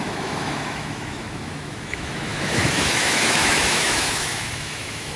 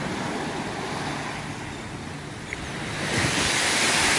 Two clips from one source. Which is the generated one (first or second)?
first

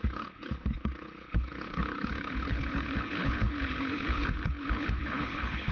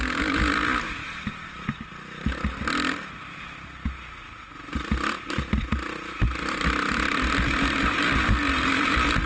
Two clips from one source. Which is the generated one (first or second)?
first